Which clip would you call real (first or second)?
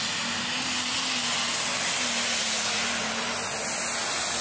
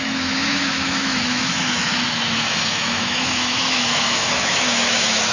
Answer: first